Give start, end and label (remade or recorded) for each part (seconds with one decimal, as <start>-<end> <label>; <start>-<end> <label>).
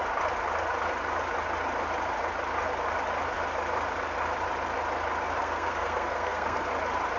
0.0-5.4 recorded; 5.4-6.7 remade; 6.7-7.2 recorded